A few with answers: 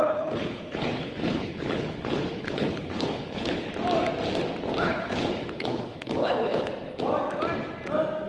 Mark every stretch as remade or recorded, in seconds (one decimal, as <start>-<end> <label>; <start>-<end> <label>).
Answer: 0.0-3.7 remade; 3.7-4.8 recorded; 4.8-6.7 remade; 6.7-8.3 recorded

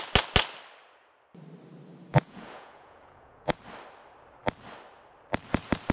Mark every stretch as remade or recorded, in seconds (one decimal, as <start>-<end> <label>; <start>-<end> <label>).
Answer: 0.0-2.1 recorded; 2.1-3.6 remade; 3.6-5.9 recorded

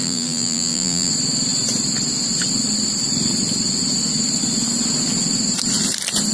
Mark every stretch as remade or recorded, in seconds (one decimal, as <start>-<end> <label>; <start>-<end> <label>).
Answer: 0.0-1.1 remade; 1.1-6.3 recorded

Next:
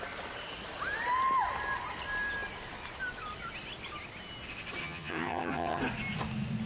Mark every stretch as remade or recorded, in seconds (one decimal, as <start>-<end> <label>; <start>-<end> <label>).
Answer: 0.0-4.8 recorded; 4.8-5.8 remade; 5.8-6.7 recorded

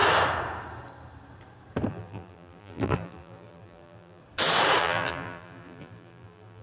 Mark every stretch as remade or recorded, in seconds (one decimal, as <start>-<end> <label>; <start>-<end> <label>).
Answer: 0.0-1.9 recorded; 1.9-4.2 remade; 4.2-4.8 recorded; 4.8-6.6 remade

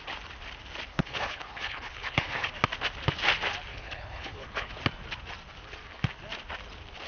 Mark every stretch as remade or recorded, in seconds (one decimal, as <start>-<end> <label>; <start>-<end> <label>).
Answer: 0.0-0.9 recorded; 0.9-2.5 remade; 2.5-3.7 recorded; 3.7-4.7 remade; 4.7-7.1 recorded